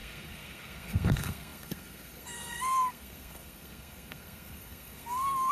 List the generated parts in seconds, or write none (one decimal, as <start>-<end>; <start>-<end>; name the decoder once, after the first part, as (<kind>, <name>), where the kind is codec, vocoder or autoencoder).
0.0-5.5 (codec, SNAC)